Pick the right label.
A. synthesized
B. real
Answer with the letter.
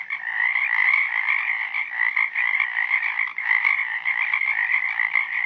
B